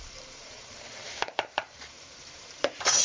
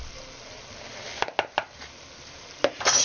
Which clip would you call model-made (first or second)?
first